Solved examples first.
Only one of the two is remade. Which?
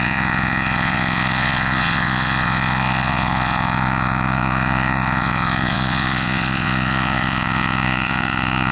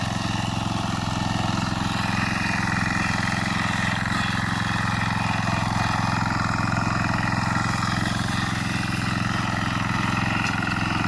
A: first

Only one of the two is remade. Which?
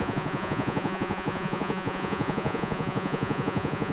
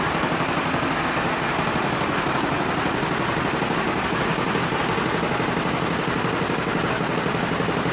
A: first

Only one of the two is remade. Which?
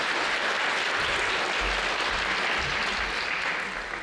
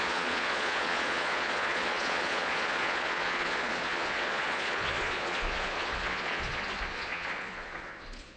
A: second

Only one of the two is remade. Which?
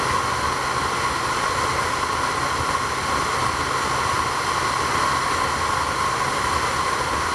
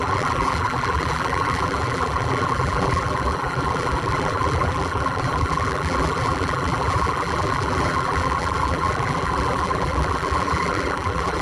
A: second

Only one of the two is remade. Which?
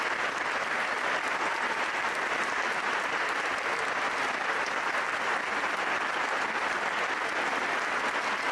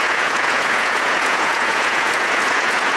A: second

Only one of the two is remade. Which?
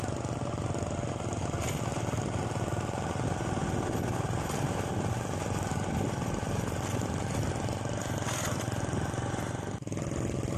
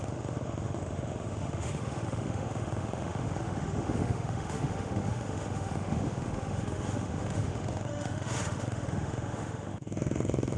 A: second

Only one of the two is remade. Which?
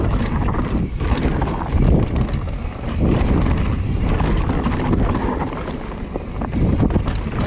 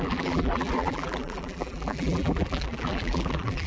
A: second